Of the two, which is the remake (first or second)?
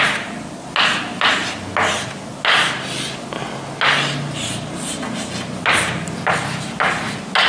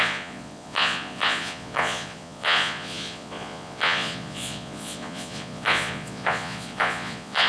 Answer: second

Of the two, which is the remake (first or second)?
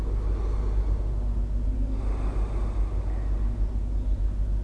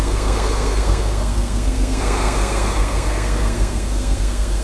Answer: second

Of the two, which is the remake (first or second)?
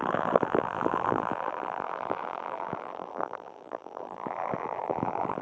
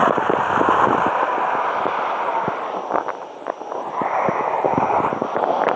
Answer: first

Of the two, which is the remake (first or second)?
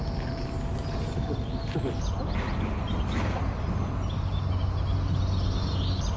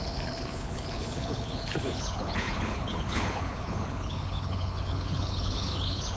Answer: second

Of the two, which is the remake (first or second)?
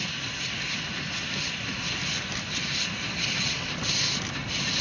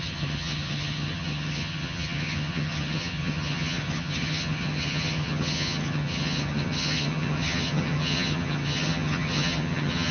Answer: second